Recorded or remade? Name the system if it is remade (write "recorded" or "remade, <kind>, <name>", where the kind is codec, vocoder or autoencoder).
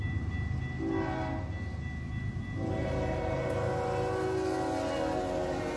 recorded